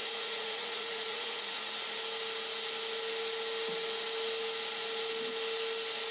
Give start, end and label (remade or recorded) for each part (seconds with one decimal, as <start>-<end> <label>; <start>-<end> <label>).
0.0-1.6 remade; 1.6-6.1 recorded